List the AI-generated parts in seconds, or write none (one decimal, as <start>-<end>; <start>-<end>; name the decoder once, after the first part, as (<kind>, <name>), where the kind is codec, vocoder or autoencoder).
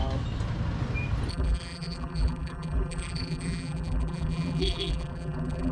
1.3-5.7 (vocoder, BigVGAN v2)